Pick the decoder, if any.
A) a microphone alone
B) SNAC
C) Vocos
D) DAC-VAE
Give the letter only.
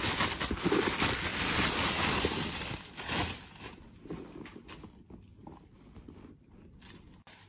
A